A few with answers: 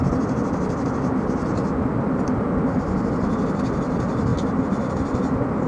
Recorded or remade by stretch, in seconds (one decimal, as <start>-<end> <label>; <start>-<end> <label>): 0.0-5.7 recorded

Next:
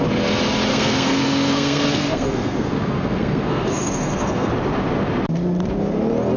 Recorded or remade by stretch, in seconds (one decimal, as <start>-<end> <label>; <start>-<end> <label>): 0.0-0.7 recorded; 0.7-4.5 remade; 4.5-6.4 recorded

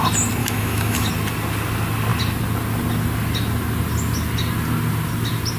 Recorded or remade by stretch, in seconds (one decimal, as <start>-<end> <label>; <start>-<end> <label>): 0.0-0.4 recorded; 0.4-1.1 remade; 1.1-5.6 recorded

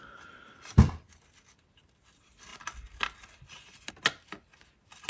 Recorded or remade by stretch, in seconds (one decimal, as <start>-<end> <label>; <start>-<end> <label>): 0.0-5.1 recorded

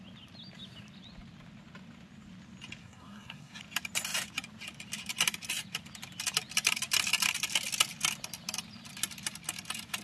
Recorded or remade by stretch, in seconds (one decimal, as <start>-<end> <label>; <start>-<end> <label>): 0.0-2.8 recorded; 2.8-3.6 remade; 3.6-10.0 recorded